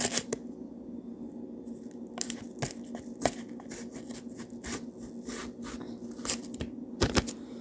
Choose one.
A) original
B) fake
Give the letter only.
A